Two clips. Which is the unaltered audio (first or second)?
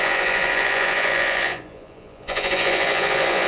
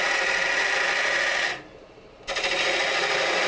second